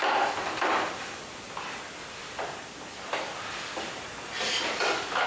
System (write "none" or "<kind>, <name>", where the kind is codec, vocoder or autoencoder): none